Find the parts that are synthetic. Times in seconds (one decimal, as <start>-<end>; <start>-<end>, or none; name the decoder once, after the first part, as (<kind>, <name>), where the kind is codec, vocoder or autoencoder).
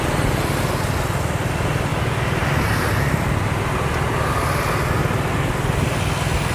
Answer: none